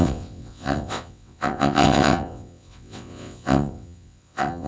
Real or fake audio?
fake